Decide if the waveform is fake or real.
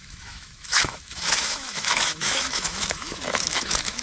fake